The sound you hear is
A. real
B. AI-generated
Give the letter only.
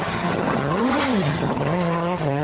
B